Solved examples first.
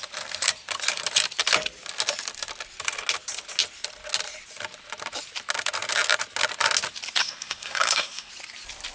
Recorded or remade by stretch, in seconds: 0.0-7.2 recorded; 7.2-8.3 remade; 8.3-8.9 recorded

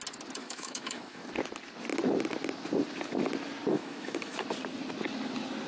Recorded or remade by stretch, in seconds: 0.0-0.4 recorded; 0.4-1.3 remade; 1.3-3.7 recorded; 3.7-4.4 remade; 4.4-5.7 recorded

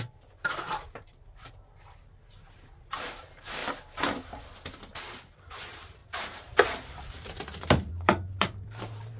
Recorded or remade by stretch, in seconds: 0.0-3.6 remade; 3.6-5.3 recorded; 5.3-9.2 remade

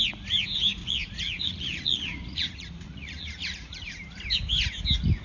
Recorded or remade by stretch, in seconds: 0.0-0.8 recorded; 0.8-3.9 remade; 3.9-5.2 recorded

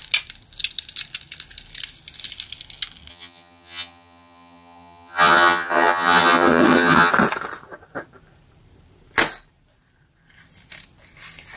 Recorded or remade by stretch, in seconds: 0.0-3.1 recorded; 3.1-7.1 remade; 7.1-11.6 recorded

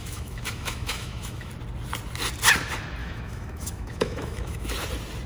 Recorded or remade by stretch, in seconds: 0.0-1.5 remade; 1.5-3.0 recorded; 3.0-4.7 remade; 4.7-5.3 recorded